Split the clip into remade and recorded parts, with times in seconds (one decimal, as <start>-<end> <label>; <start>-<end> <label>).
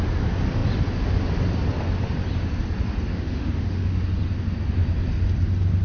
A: 0.0-3.1 recorded; 3.1-4.0 remade; 4.0-5.8 recorded